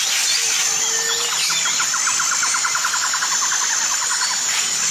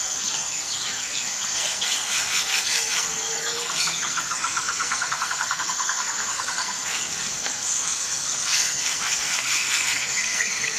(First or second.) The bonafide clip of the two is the first